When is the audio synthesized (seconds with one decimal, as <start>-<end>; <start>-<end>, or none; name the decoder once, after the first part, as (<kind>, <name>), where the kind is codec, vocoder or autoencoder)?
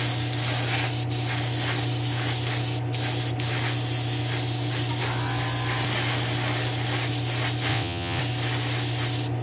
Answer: 7.7-8.2 (vocoder, WaveNeXt)